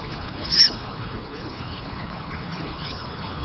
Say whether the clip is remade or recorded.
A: remade